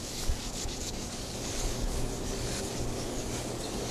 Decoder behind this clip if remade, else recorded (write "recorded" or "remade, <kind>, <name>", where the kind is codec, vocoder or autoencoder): remade, codec, DAC